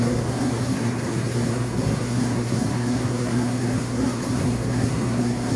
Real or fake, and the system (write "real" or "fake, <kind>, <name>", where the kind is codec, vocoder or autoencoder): fake, codec, SNAC